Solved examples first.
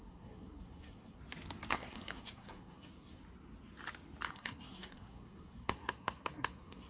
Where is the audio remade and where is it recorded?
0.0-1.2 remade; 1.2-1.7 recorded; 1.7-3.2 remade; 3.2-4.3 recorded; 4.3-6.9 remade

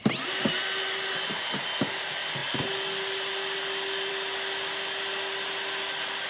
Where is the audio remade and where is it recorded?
0.0-6.3 recorded

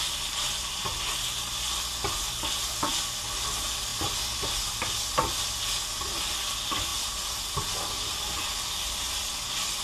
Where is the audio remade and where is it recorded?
0.0-9.8 recorded

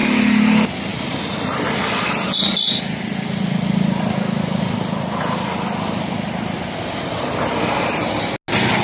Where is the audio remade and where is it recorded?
0.0-8.8 recorded